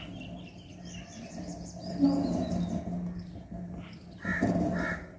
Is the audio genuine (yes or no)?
yes